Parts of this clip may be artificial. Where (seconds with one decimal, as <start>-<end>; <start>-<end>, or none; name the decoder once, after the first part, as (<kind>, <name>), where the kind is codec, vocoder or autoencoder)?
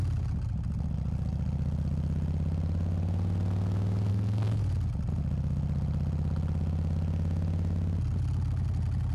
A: 4.1-4.6 (codec, SNAC)